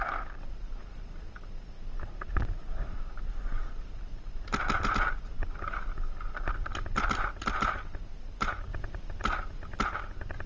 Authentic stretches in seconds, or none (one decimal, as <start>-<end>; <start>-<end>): 0.0-10.5